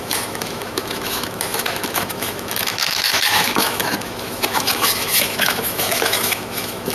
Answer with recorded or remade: remade